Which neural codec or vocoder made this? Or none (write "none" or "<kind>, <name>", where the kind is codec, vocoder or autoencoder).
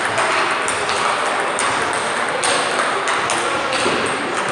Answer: none